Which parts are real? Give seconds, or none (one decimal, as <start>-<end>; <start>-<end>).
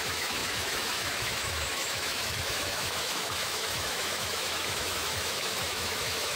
none